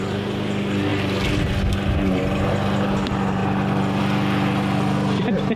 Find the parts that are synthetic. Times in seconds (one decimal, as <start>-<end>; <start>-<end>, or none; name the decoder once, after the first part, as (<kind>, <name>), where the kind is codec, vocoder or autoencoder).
none